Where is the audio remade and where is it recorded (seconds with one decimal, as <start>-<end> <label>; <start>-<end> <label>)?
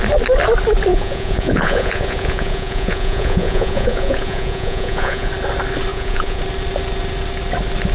0.0-0.9 recorded; 0.9-5.3 remade; 5.3-5.9 recorded; 5.9-6.4 remade; 6.4-7.9 recorded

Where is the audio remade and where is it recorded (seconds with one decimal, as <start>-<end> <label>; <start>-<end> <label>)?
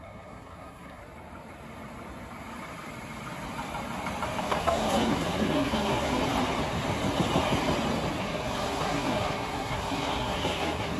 0.0-1.0 remade; 1.0-4.4 recorded; 4.4-6.2 remade; 6.2-8.2 recorded; 8.2-11.0 remade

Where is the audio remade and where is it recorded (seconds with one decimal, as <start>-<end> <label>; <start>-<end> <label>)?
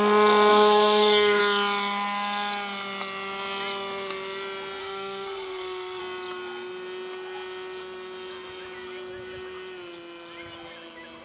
0.0-0.5 recorded; 0.5-1.4 remade; 1.4-4.8 recorded; 4.8-6.0 remade; 6.0-11.2 recorded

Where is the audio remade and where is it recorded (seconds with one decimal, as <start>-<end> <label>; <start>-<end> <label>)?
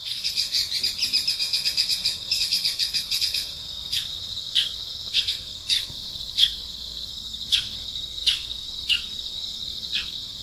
0.0-0.6 remade; 0.6-1.3 recorded; 1.3-10.4 remade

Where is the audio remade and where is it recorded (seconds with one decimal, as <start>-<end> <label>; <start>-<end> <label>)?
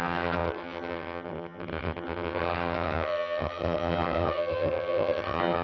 0.0-5.6 remade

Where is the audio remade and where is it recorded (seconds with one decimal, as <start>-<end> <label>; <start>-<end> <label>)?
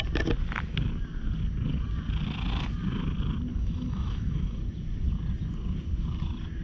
0.0-3.5 recorded; 3.5-4.6 remade; 4.6-6.6 recorded